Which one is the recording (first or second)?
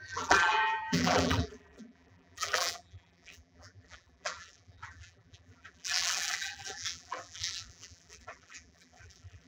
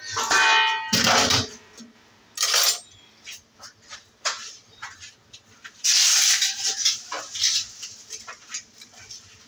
second